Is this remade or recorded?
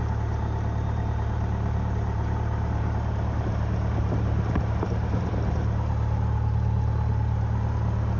remade